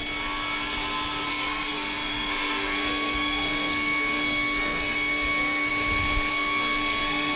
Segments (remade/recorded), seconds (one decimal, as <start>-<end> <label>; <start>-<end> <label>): 0.0-1.3 recorded; 1.3-5.7 remade; 5.7-6.3 recorded; 6.3-7.4 remade